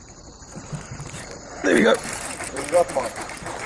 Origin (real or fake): fake